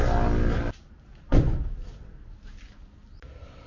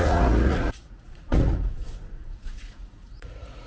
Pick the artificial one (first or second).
second